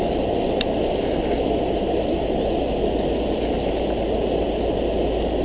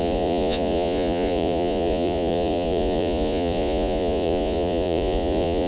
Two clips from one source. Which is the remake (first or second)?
second